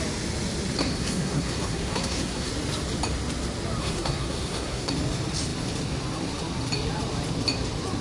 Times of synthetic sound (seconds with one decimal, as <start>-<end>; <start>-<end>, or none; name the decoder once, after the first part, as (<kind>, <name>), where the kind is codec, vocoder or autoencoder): 0.8-2.5 (codec, SNAC); 3.8-4.9